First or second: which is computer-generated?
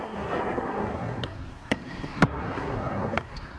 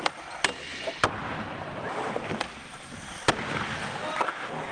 first